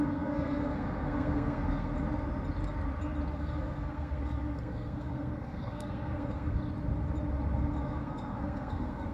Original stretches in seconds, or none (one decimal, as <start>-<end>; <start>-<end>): 1.9-3.3; 6.6-7.8

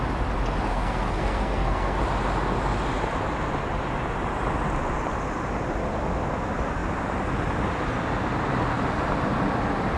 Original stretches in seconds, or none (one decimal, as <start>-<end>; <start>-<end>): 0.0-0.7; 2.0-10.0

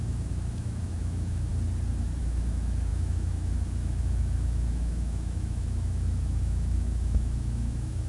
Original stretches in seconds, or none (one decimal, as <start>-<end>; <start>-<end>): 1.5-2.2

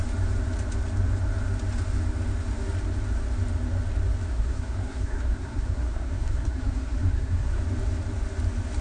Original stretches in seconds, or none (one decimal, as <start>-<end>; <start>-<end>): 0.0-4.3; 7.6-8.8

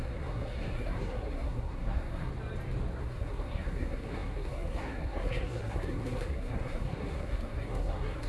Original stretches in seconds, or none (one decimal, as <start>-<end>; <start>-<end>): 2.3-3.0

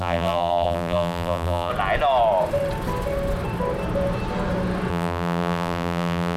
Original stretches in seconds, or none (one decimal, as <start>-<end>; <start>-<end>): 1.7-4.9

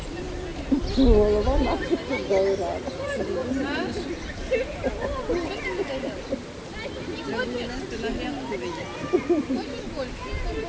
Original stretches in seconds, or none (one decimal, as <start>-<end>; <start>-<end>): 0.0-10.7